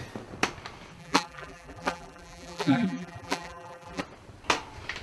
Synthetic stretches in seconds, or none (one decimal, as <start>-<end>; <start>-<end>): 1.0-4.0